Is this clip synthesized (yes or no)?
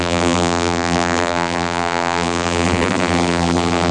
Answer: yes